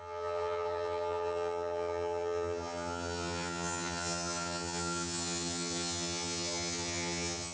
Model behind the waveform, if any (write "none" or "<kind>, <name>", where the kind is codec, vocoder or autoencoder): vocoder, HiFi-GAN